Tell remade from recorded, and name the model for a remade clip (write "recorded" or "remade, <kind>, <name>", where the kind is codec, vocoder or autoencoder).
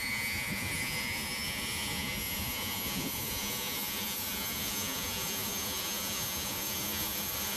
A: remade, vocoder, Vocos